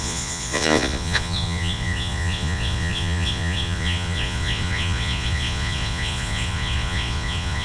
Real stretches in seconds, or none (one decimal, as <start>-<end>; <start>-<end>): none